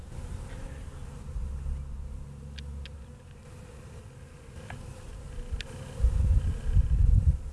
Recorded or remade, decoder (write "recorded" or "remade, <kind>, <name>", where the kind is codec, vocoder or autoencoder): recorded